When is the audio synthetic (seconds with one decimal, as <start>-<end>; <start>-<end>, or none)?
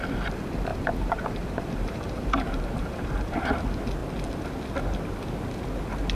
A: 0.7-3.6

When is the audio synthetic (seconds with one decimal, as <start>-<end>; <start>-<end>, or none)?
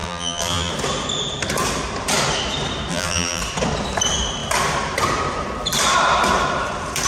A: 0.0-0.7; 2.9-3.4